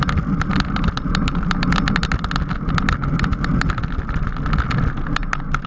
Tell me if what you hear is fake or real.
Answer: real